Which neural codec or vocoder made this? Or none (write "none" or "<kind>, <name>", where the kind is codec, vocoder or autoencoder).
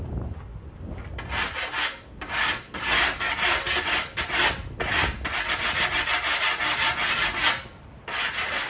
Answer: none